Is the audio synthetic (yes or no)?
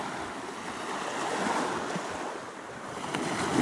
no